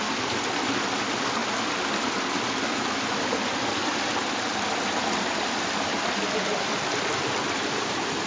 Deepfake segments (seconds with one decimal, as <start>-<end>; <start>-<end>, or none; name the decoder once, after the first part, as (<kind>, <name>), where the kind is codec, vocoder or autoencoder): 0.0-1.4 (vocoder, BigVGAN v2); 4.7-8.3